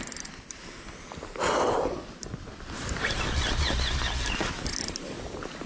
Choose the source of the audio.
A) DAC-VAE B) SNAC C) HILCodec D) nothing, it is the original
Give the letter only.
D